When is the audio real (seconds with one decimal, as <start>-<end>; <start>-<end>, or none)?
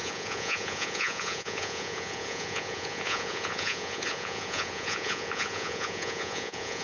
none